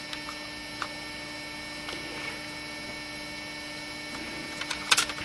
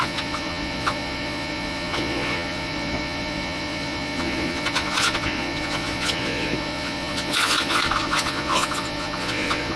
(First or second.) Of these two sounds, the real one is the first